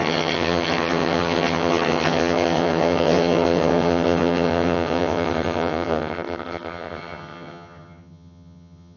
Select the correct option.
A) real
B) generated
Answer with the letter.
B